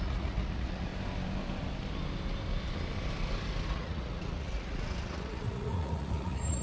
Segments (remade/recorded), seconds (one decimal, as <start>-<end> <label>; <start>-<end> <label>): 0.0-0.9 remade; 0.9-3.7 recorded; 3.7-6.6 remade